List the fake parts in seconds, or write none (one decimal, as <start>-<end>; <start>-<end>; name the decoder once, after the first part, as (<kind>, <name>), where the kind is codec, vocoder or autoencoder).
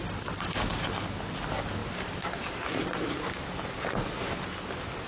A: none